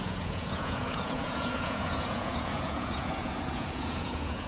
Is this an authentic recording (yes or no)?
no